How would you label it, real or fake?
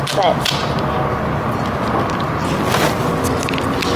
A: real